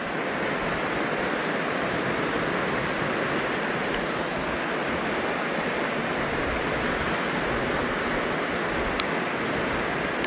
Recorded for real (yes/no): yes